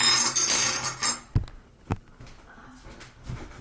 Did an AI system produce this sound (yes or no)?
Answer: no